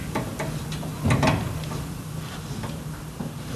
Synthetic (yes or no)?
no